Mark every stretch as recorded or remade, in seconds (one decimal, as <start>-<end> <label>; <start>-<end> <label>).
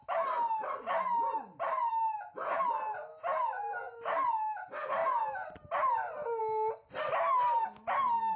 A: 0.0-8.4 recorded